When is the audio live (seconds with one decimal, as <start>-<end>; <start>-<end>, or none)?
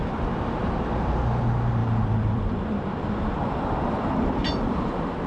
0.0-1.8